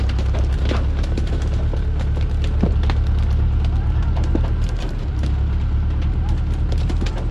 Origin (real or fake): real